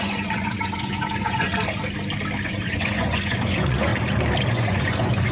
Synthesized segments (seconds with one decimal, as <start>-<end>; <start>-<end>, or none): 0.0-1.5; 2.4-3.9; 4.5-5.3